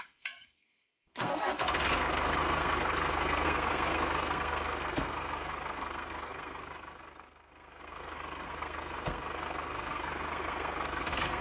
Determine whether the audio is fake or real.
fake